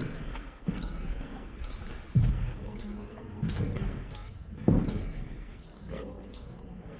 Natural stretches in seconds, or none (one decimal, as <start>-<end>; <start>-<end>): 1.7-2.3